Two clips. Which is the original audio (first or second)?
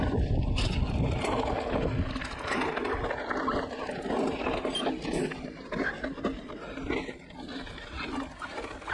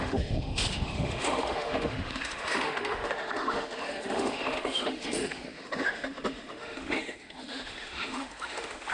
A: first